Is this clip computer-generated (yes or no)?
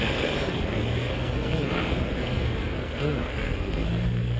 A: yes